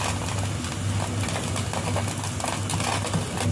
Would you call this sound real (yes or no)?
yes